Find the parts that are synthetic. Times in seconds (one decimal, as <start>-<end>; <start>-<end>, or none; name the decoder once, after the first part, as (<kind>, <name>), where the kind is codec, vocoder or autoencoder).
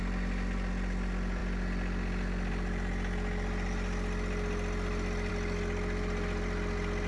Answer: none